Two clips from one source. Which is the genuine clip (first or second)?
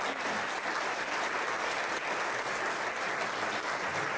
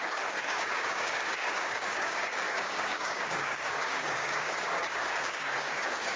first